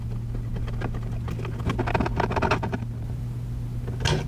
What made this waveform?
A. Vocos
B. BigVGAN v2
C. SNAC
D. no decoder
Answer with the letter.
D